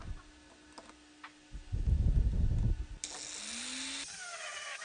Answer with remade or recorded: recorded